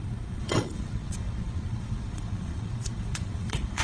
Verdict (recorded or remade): remade